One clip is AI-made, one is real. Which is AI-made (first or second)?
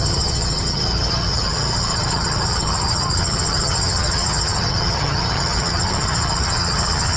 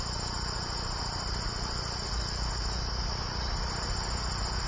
first